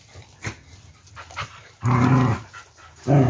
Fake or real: real